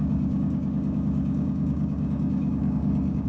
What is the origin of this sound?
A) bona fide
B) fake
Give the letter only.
B